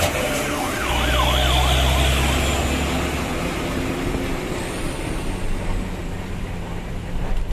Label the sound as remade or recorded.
recorded